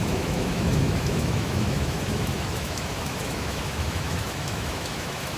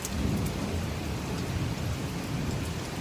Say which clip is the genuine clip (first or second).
second